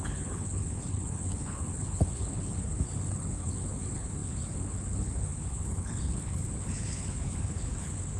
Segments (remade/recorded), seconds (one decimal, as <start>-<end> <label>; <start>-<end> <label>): 0.0-8.2 remade